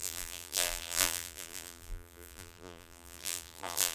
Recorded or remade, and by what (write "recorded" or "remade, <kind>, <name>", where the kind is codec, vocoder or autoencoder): remade, vocoder, BigVGAN v2